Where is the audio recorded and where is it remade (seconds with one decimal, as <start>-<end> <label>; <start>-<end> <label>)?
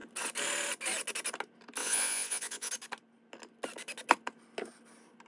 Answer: 0.0-1.8 recorded; 1.8-2.7 remade; 2.7-5.3 recorded